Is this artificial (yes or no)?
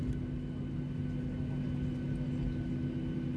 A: no